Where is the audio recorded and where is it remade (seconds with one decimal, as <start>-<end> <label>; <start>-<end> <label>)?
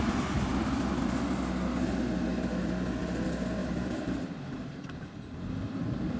0.0-3.6 recorded; 3.6-5.0 remade; 5.0-6.2 recorded